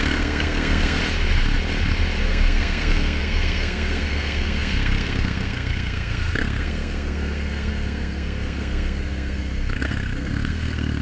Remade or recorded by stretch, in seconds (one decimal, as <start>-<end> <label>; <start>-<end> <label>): 0.0-1.0 remade; 1.0-2.2 recorded; 2.2-11.0 remade